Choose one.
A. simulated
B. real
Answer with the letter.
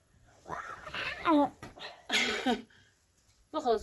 A